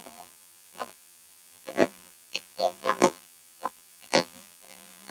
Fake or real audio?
fake